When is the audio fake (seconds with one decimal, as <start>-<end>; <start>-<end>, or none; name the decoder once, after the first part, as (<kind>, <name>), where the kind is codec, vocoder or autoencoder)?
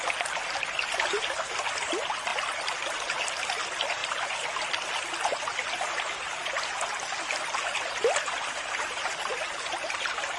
none